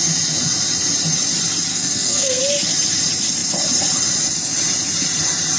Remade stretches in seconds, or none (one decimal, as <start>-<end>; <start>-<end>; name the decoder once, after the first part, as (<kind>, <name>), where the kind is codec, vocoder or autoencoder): 1.7-2.4 (codec, SNAC)